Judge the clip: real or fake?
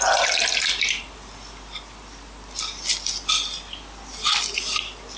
real